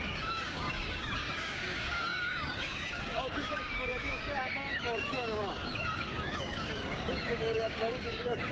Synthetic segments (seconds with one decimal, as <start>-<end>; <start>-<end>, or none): 0.0-8.5